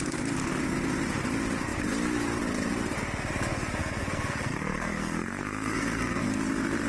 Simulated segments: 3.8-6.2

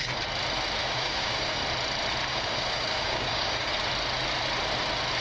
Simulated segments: 0.8-1.6; 2.3-3.7

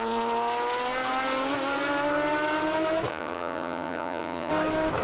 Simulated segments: 3.1-4.5

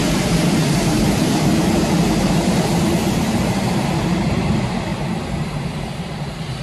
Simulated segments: 0.0-4.9; 6.0-6.6